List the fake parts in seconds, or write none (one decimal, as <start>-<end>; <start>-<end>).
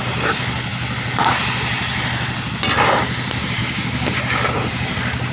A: 3.6-4.2